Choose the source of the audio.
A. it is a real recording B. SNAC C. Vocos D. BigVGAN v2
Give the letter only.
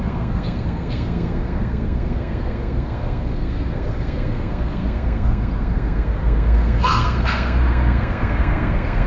B